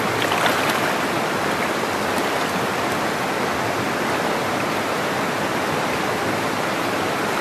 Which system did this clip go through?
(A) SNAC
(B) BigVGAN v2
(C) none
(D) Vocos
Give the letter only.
C